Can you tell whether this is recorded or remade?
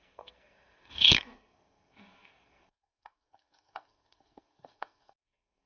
remade